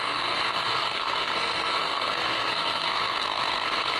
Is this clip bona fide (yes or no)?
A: no